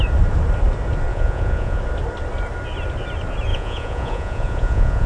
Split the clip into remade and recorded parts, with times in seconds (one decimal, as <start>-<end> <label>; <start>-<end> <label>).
0.0-1.1 recorded; 1.1-1.8 remade; 1.8-3.5 recorded; 3.5-5.1 remade